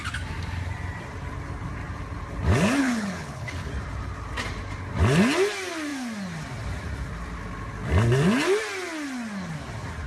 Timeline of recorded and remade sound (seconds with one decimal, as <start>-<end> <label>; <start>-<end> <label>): 0.0-2.8 recorded; 2.8-3.7 remade; 3.7-10.1 recorded